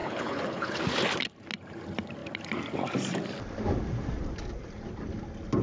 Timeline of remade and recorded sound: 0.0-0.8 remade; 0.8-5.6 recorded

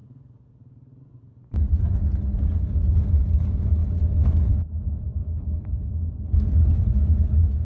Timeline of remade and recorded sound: 0.0-5.2 recorded; 5.2-5.9 remade; 5.9-7.6 recorded

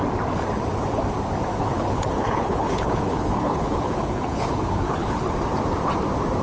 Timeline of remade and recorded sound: 0.0-1.5 recorded; 1.5-5.3 remade; 5.3-6.4 recorded